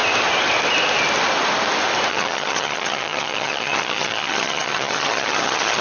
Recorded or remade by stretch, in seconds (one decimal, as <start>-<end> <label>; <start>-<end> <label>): 0.0-2.1 recorded; 2.1-5.8 remade